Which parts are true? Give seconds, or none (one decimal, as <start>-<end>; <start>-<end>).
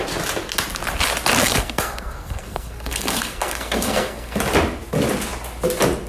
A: 0.0-1.4; 4.4-6.1